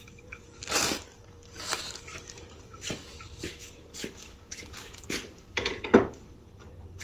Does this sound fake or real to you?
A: fake